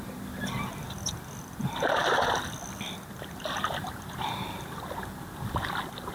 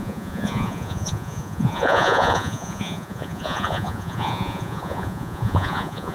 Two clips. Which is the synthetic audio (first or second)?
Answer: second